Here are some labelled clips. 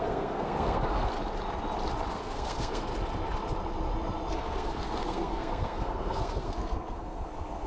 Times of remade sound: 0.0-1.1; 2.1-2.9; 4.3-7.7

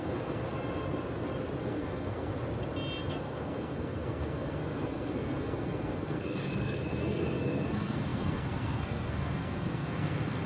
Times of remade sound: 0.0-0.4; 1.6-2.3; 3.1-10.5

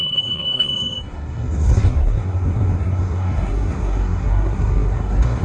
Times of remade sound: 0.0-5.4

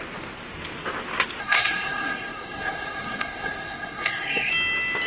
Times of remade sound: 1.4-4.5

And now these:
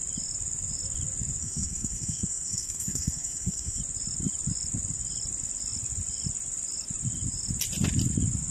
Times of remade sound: 1.4-3.8

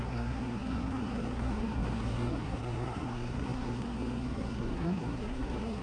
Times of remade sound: 0.0-5.8

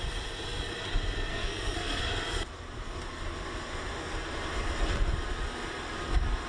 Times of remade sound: 1.3-2.0

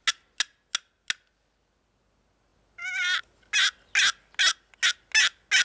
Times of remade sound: none